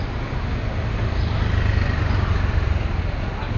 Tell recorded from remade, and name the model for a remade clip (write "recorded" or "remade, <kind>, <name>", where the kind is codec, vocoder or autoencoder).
recorded